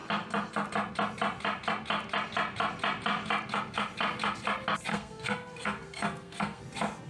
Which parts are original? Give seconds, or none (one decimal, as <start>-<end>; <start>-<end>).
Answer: 0.0-4.9; 6.6-7.1